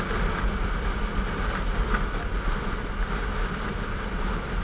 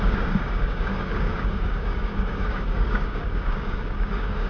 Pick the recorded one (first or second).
first